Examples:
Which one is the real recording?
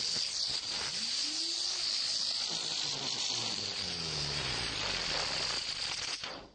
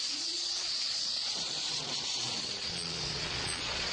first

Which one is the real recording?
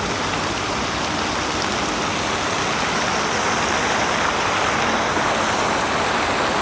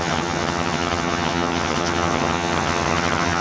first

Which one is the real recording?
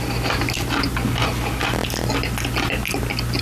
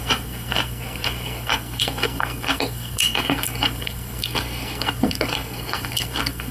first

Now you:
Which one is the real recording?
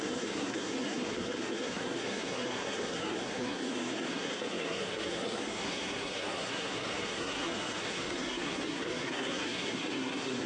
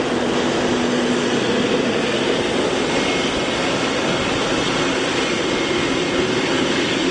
second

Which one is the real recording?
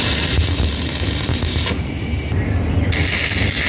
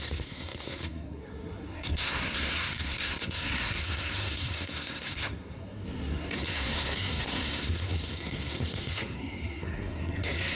first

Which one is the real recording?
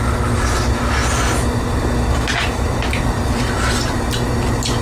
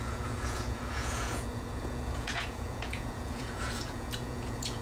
first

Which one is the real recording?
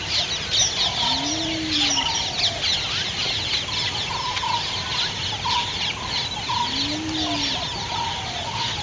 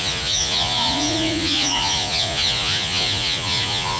first